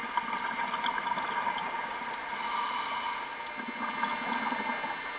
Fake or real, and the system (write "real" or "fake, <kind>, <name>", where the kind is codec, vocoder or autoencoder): real